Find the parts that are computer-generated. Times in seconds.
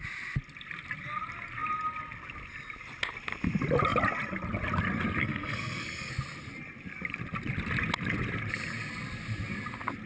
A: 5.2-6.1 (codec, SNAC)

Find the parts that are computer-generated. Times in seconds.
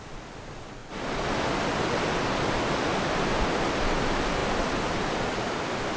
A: none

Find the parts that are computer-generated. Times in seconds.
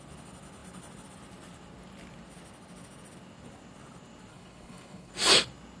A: 4.3-5.1 (codec, HILCodec)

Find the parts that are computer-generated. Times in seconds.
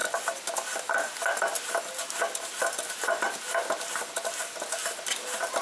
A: none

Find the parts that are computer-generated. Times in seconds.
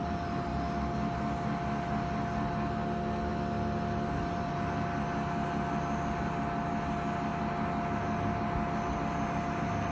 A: none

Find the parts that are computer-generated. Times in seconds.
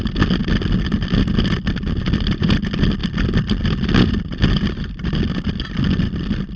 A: none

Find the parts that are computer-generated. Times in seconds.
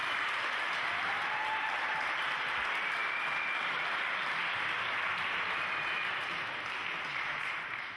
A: none